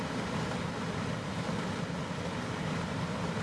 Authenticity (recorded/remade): recorded